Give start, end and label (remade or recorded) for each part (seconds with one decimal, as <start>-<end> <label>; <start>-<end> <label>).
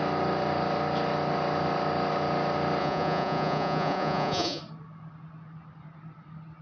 0.0-2.8 recorded; 2.8-4.6 remade; 4.6-6.6 recorded